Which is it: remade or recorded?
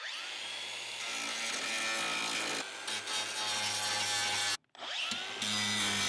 recorded